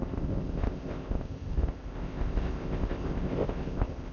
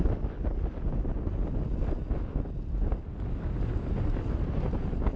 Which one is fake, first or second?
first